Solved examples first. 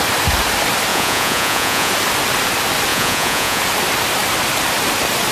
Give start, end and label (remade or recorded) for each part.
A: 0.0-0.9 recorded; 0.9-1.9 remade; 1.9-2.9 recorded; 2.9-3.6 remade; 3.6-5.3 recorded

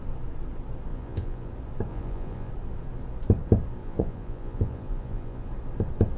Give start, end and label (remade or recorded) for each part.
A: 0.0-0.9 recorded; 0.9-1.5 remade; 1.5-1.9 recorded; 1.9-2.5 remade; 2.5-3.8 recorded; 3.8-5.5 remade; 5.5-6.2 recorded